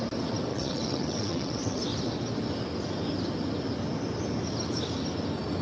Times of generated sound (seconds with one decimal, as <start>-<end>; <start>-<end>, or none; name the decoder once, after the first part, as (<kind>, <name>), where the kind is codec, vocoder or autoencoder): 0.5-1.8 (vocoder, WaveNeXt)

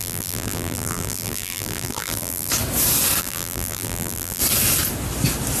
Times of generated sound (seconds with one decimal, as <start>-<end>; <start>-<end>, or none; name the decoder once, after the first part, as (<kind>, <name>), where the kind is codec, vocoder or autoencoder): 0.0-2.5 (vocoder, BigVGAN v2); 3.2-4.4